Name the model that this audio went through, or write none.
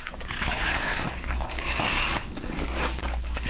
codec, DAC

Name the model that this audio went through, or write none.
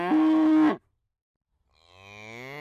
none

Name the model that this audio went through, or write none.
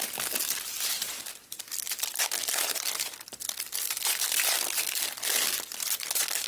vocoder, BigVGAN v2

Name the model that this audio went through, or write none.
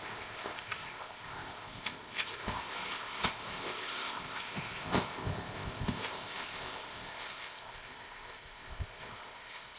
codec, ZipCodec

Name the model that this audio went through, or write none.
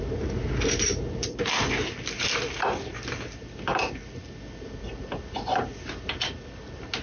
none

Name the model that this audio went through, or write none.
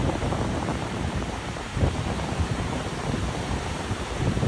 vocoder, BigVGAN v2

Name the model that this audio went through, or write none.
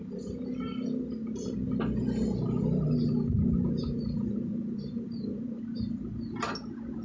none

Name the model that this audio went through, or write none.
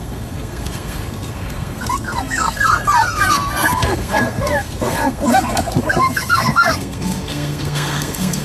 codec, SNAC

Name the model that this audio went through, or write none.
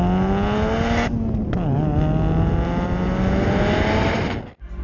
none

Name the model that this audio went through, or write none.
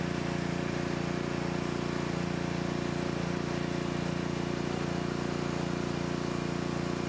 none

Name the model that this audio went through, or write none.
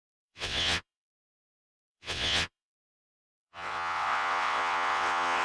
vocoder, WaveNeXt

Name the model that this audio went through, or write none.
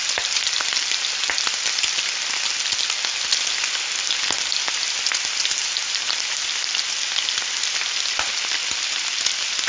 none